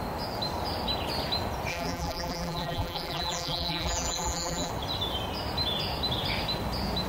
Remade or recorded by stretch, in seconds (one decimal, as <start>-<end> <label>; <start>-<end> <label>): 0.0-1.7 recorded; 1.7-4.7 remade; 4.7-7.1 recorded

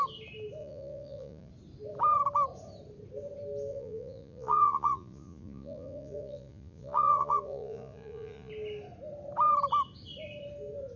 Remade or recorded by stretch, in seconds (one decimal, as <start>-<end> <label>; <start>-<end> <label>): 0.0-0.6 recorded; 0.6-1.5 remade; 1.5-3.7 recorded; 3.7-8.5 remade; 8.5-11.0 recorded

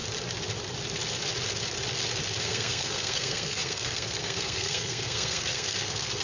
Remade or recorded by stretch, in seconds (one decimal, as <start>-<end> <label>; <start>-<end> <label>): 0.0-2.4 recorded; 2.4-6.2 remade